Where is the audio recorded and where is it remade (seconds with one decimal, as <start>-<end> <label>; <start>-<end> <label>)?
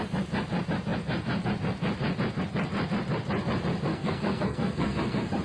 0.0-3.9 recorded; 3.9-5.4 remade